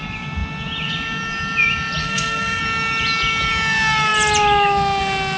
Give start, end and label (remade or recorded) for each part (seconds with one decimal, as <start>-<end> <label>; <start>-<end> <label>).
0.0-2.0 recorded; 2.0-2.6 remade; 2.6-5.4 recorded